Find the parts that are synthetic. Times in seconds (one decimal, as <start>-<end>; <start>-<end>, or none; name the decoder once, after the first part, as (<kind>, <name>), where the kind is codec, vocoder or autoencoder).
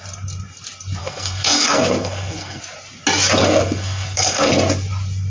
1.0-2.6 (codec, SNAC); 3.4-4.5